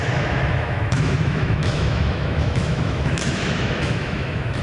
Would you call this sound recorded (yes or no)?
no